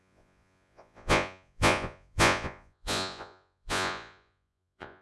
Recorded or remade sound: remade